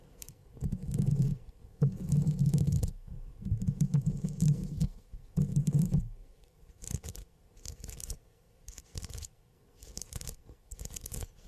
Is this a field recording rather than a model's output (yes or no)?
no